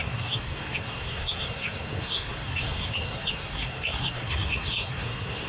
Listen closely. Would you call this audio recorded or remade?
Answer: remade